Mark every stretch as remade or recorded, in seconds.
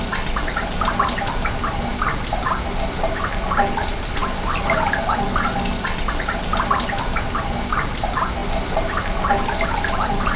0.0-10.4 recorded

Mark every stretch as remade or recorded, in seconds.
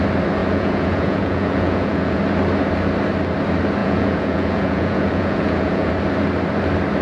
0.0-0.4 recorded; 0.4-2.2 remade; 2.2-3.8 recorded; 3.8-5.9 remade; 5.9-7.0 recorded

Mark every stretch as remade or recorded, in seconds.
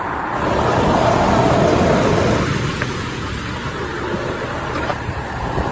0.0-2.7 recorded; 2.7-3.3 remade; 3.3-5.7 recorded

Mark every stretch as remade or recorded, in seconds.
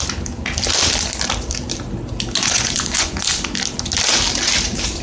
0.0-2.4 recorded; 2.4-3.3 remade; 3.3-5.0 recorded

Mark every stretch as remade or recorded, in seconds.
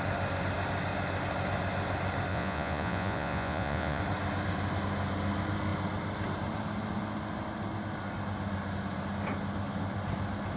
0.0-2.3 recorded; 2.3-4.0 remade; 4.0-10.6 recorded